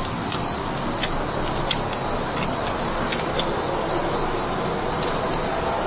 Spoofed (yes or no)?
no